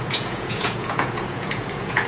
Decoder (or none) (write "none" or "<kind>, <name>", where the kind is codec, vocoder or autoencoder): vocoder, Vocos